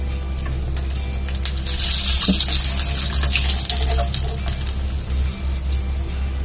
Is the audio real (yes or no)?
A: yes